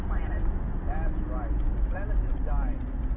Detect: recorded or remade recorded